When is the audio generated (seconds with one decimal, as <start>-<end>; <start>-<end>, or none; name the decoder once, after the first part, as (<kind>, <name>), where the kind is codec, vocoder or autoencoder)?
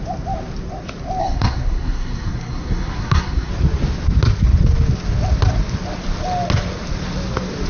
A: 1.2-3.5 (codec, SNAC)